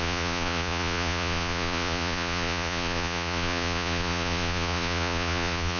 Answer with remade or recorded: remade